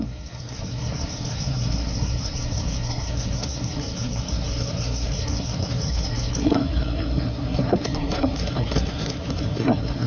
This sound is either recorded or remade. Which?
remade